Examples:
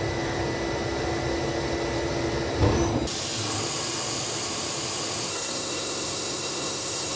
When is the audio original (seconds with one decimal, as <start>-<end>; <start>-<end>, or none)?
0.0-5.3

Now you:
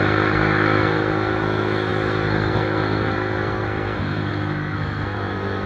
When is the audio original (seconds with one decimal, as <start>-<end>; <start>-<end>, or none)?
none

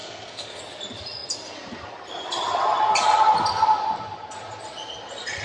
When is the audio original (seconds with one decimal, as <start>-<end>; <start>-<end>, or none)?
0.6-5.4

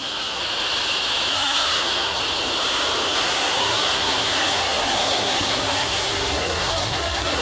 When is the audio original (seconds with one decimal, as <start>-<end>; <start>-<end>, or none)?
0.4-1.3; 2.2-3.1

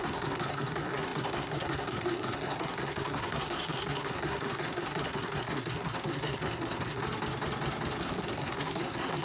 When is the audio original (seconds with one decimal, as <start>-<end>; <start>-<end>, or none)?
7.0-8.0

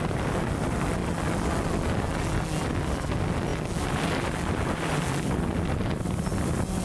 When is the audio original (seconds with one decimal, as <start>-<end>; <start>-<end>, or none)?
0.0-6.8